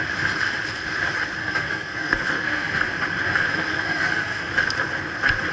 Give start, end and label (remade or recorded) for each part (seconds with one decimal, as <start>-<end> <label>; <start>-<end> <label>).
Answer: 0.0-1.4 recorded; 1.4-2.8 remade; 2.8-3.5 recorded; 3.5-4.5 remade; 4.5-5.5 recorded